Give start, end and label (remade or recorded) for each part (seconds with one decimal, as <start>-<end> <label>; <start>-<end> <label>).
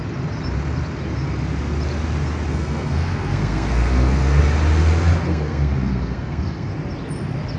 0.0-2.5 recorded; 2.5-4.4 remade; 4.4-5.3 recorded; 5.3-6.7 remade; 6.7-7.6 recorded